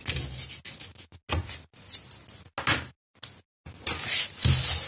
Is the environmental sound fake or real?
real